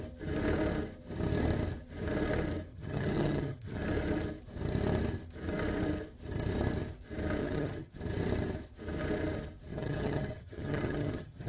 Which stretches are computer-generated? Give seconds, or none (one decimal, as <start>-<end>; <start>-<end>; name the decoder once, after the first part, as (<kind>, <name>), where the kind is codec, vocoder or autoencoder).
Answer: 2.7-3.8 (vocoder, HiFi-GAN); 7.4-8.0; 9.7-11.5